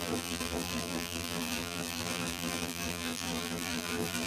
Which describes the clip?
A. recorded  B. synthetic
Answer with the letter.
B